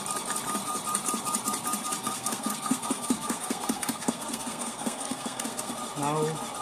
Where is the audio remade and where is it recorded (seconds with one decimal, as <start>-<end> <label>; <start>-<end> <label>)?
0.0-2.0 recorded; 2.0-5.7 remade; 5.7-6.6 recorded